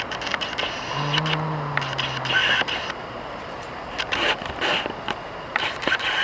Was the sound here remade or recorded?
remade